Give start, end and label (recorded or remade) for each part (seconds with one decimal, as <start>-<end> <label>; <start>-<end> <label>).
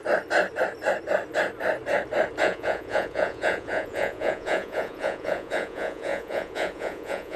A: 0.0-2.4 recorded; 2.4-7.4 remade